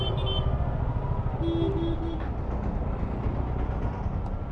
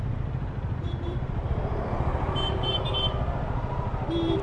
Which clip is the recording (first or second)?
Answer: first